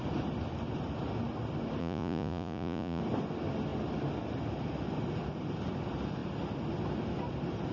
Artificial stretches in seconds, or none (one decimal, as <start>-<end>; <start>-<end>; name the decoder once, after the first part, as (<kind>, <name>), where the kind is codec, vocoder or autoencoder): 1.8-3.0 (vocoder, Vocos)